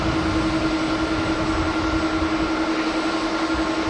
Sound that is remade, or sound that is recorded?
recorded